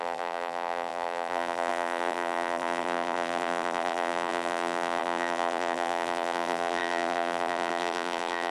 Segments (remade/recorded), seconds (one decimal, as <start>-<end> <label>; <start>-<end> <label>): 0.0-8.5 remade